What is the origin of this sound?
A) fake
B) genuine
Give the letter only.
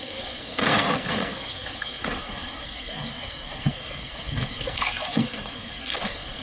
A